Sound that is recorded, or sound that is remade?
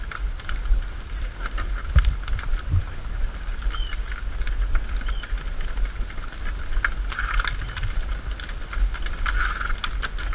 recorded